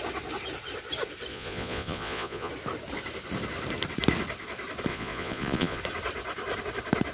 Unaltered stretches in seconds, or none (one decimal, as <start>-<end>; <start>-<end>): 0.0-1.3; 2.5-4.9; 5.8-7.1